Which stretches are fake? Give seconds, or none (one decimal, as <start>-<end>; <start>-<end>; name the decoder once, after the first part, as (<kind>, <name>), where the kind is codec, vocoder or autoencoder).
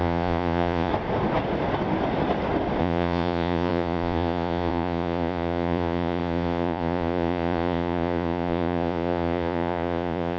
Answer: 0.0-0.9 (vocoder, Vocos); 2.8-10.4